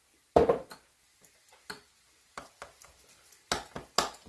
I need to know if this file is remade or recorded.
recorded